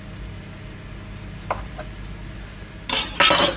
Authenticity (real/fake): real